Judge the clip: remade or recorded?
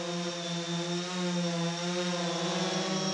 recorded